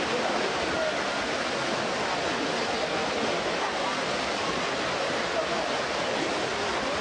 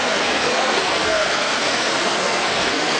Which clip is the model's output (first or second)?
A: second